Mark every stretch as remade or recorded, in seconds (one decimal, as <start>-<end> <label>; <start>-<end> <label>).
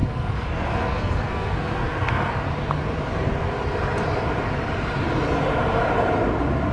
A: 0.0-2.3 remade; 2.3-6.7 recorded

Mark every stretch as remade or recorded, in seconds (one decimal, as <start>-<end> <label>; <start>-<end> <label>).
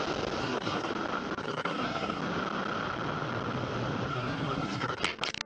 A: 0.0-0.4 recorded; 0.4-0.9 remade; 0.9-1.4 recorded; 1.4-2.2 remade; 2.2-4.1 recorded; 4.1-5.0 remade; 5.0-5.5 recorded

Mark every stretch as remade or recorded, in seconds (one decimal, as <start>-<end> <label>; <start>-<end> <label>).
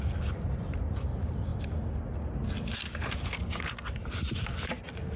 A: 0.0-5.2 recorded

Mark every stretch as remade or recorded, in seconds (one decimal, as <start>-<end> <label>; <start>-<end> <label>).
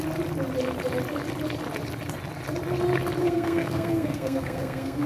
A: 0.0-3.2 recorded; 3.2-5.1 remade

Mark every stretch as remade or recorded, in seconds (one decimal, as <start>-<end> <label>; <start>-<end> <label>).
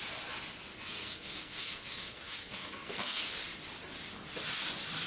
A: 0.0-0.7 recorded; 0.7-3.3 remade; 3.3-5.1 recorded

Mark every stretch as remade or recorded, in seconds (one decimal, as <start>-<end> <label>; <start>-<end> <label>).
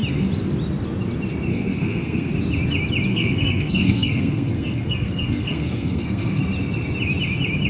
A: 0.0-1.5 recorded; 1.5-2.4 remade; 2.4-3.1 recorded; 3.1-6.4 remade; 6.4-7.7 recorded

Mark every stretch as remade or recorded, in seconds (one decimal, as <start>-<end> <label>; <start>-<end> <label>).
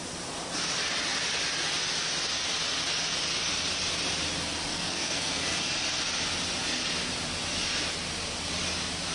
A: 0.0-4.7 recorded; 4.7-5.6 remade; 5.6-9.1 recorded